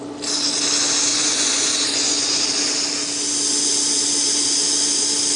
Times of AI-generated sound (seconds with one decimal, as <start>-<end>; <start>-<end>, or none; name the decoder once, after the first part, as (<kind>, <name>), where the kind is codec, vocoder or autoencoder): 1.1-2.4 (vocoder, Vocos)